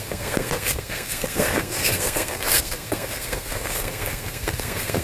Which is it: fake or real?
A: fake